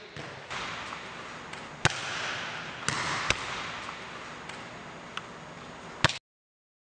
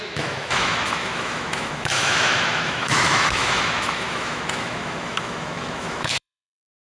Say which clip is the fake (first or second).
second